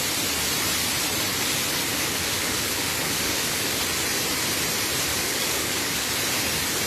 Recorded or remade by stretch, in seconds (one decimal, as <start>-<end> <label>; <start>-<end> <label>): 0.0-1.9 recorded; 1.9-3.8 remade; 3.8-5.1 recorded; 5.1-6.1 remade; 6.1-6.9 recorded